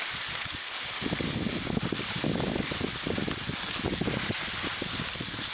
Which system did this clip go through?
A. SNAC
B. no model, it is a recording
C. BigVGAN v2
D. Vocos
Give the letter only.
B